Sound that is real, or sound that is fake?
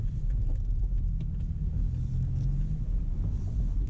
real